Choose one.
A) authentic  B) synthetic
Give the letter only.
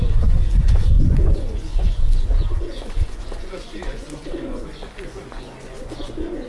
B